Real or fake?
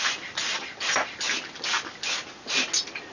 real